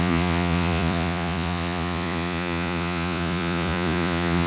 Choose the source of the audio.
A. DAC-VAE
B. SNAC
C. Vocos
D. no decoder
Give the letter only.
C